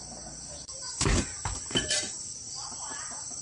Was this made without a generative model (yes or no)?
no